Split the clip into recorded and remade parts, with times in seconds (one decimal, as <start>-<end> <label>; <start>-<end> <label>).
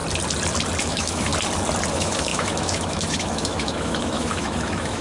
0.0-0.8 recorded; 0.8-1.3 remade; 1.3-1.9 recorded; 1.9-5.0 remade